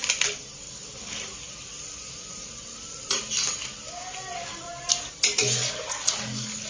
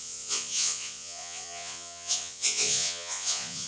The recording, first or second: first